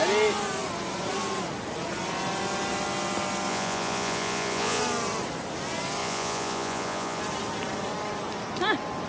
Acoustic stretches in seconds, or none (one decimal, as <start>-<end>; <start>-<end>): 0.0-3.5; 4.8-6.0; 7.2-9.1